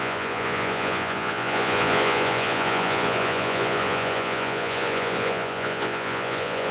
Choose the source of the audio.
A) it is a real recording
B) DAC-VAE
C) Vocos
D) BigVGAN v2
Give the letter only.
C